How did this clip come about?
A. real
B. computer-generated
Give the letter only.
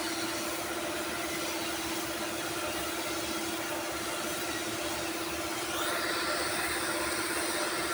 A